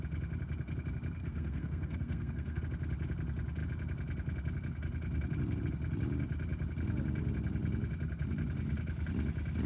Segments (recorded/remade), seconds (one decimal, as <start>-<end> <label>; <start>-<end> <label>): 0.0-1.2 recorded; 1.2-2.6 remade; 2.6-9.7 recorded